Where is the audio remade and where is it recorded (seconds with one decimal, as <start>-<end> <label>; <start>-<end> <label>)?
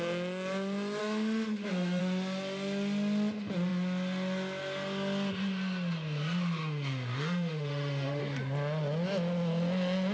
0.0-1.0 recorded; 1.0-2.0 remade; 2.0-6.6 recorded; 6.6-8.2 remade; 8.2-10.1 recorded